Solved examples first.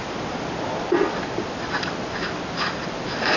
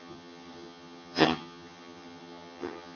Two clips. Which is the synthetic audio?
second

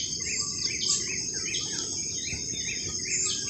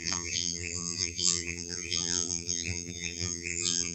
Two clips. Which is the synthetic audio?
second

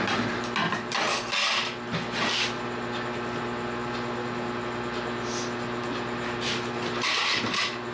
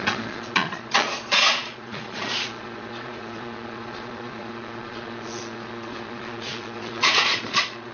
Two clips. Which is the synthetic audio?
second